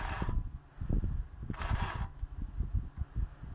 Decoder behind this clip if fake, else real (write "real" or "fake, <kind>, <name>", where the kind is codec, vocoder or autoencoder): real